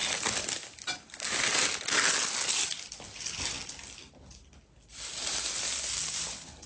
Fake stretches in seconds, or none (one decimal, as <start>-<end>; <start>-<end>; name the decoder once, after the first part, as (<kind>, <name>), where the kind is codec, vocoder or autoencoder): none